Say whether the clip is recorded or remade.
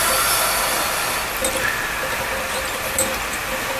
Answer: recorded